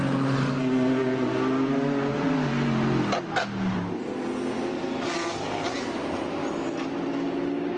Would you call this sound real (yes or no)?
yes